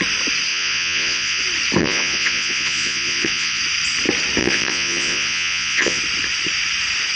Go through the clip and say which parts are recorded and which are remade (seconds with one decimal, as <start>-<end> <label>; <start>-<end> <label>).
0.0-0.5 recorded; 0.5-1.4 remade; 1.4-1.8 recorded; 1.8-3.6 remade; 3.6-4.4 recorded; 4.4-6.0 remade; 6.0-7.2 recorded